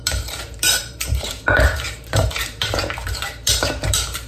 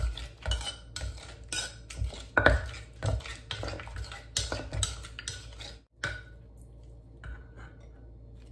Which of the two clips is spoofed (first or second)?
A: first